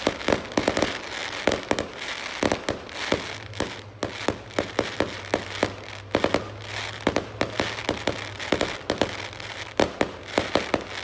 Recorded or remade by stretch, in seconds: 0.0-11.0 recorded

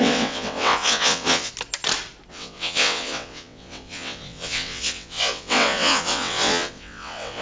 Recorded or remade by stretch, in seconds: 0.0-1.5 remade; 1.5-2.3 recorded; 2.3-7.4 remade

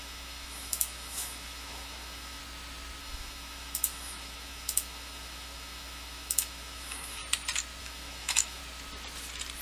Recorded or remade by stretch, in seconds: 0.0-2.4 remade; 2.4-3.0 recorded; 3.0-7.2 remade; 7.2-7.8 recorded; 7.8-8.6 remade; 8.6-9.6 recorded